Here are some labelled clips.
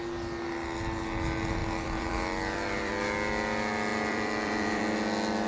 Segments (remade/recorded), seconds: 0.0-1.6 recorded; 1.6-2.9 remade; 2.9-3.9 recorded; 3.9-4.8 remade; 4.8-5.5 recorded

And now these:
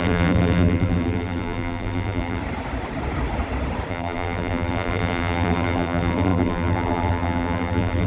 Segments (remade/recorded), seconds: 0.0-2.4 remade; 2.4-3.9 recorded; 3.9-8.1 remade

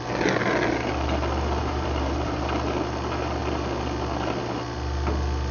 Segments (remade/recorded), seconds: 0.0-1.6 recorded; 1.6-2.4 remade; 2.4-5.5 recorded

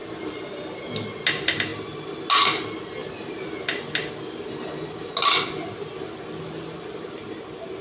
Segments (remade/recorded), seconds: 0.0-7.8 recorded